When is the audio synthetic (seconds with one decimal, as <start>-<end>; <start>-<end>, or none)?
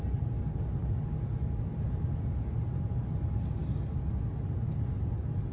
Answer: none